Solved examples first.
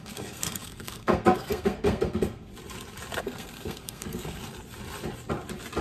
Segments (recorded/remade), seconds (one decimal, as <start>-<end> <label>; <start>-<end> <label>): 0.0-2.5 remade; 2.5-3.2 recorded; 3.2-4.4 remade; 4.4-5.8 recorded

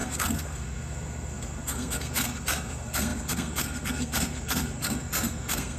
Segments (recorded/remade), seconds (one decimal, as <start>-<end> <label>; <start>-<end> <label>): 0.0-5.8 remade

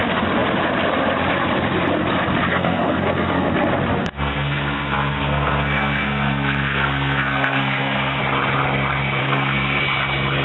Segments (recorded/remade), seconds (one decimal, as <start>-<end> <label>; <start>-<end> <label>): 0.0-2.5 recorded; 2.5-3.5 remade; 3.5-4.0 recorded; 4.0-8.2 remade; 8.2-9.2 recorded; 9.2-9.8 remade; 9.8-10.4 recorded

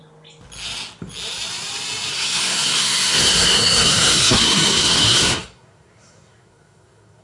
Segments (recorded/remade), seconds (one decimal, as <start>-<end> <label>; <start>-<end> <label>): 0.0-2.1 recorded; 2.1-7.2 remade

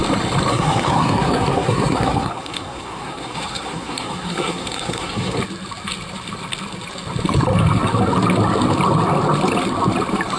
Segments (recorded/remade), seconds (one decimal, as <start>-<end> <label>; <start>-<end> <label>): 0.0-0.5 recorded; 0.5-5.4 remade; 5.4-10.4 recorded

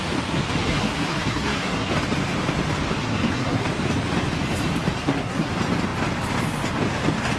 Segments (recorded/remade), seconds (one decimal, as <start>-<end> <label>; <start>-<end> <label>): 0.0-0.6 recorded; 0.6-1.9 remade; 1.9-3.0 recorded; 3.0-3.7 remade; 3.7-5.0 recorded; 5.0-5.5 remade; 5.5-7.4 recorded

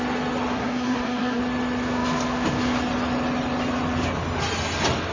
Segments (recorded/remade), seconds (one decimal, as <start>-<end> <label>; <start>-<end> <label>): 0.0-0.5 recorded; 0.5-1.4 remade; 1.4-5.1 recorded